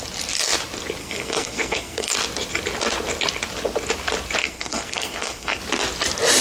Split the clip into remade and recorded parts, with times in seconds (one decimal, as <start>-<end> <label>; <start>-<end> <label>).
0.0-1.0 recorded; 1.0-2.1 remade; 2.1-4.4 recorded; 4.4-5.6 remade; 5.6-6.4 recorded